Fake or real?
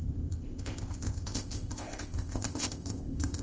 fake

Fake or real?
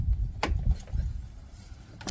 real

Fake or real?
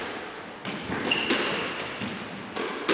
real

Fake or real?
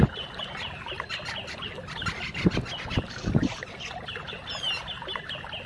real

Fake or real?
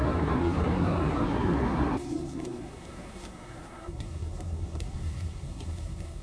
fake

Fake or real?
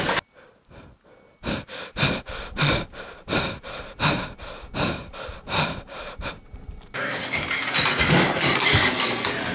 real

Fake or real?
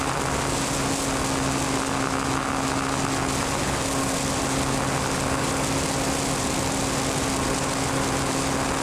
real